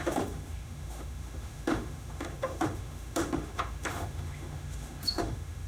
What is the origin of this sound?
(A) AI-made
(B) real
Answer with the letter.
A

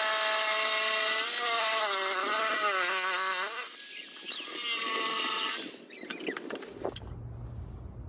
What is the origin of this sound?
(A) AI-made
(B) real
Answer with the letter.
B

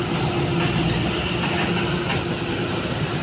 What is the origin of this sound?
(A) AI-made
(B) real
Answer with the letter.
B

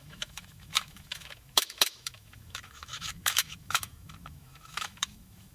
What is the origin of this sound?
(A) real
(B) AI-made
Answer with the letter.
B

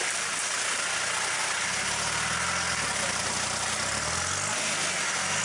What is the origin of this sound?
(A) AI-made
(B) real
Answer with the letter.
B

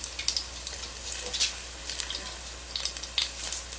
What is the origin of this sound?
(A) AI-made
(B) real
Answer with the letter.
B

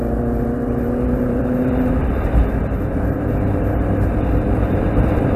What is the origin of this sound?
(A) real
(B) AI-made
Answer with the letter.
B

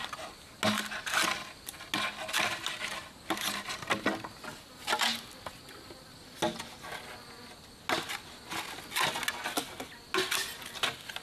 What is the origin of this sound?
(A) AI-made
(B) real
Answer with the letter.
B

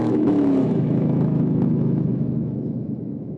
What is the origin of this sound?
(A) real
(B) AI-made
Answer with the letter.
B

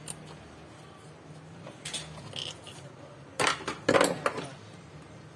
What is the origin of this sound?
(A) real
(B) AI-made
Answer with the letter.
A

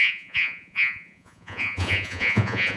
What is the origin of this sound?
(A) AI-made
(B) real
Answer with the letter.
A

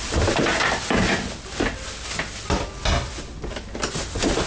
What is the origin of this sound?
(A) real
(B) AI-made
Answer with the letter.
A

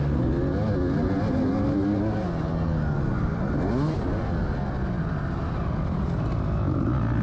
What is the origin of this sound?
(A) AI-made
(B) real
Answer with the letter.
B